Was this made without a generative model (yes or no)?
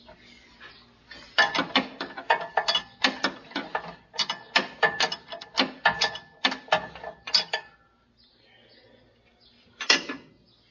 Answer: yes